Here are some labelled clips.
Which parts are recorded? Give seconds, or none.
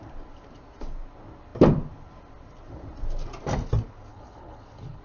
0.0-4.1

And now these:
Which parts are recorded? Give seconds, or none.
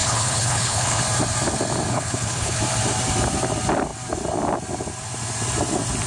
1.0-1.9; 2.6-6.1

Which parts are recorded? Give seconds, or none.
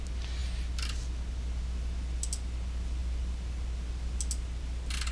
0.0-5.1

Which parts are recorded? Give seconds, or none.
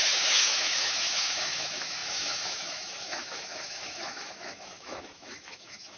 none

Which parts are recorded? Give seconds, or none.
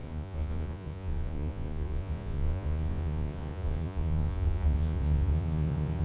none